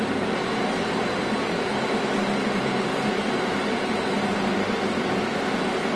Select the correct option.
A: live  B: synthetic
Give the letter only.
B